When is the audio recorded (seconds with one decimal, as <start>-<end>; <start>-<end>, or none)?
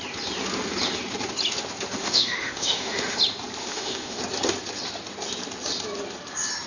0.0-2.0; 3.2-3.6; 4.2-6.7